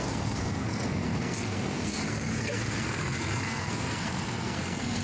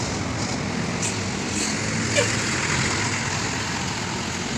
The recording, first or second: second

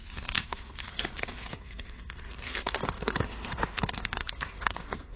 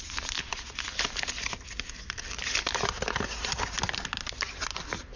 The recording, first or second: second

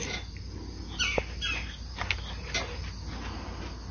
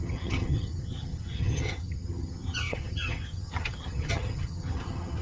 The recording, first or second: first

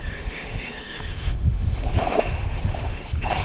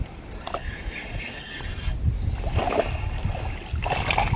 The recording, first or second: second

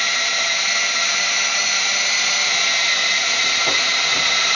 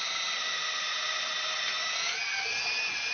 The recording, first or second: second